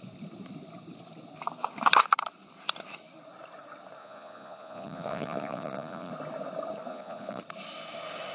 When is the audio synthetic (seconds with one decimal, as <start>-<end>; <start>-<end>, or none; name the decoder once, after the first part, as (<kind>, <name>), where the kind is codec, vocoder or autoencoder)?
4.0-6.1 (vocoder, Vocos); 6.9-7.4